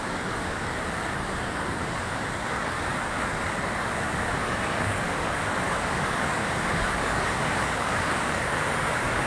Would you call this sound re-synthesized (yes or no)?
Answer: yes